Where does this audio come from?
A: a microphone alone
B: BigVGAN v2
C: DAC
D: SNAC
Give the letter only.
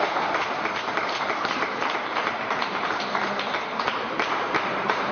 B